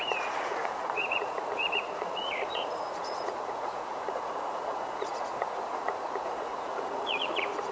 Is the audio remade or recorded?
remade